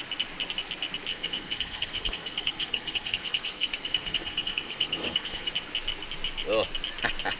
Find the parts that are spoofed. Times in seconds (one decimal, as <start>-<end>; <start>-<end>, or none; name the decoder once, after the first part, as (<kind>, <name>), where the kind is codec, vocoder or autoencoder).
1.1-5.5 (codec, SNAC)

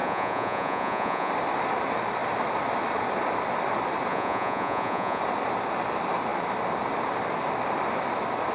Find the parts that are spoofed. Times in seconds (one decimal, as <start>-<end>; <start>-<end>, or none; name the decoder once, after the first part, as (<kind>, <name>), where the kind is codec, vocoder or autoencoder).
0.0-1.3 (vocoder, Vocos); 4.1-5.2

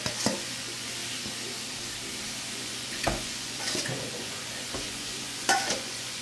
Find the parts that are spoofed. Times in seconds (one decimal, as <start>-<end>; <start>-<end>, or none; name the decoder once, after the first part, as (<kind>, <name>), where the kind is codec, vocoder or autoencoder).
0.0-1.0 (vocoder, Vocos); 2.4-6.2

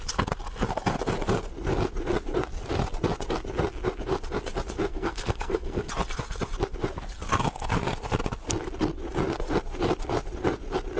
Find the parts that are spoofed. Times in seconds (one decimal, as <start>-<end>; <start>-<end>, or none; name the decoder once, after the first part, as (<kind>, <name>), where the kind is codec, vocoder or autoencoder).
4.9-5.9 (codec, SNAC)

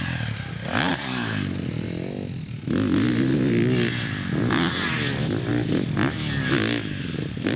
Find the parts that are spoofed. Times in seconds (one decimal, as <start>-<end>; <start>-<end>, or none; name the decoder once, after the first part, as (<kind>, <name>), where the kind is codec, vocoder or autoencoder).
none